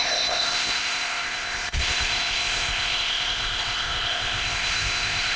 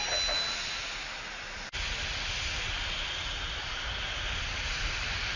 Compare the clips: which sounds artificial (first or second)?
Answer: first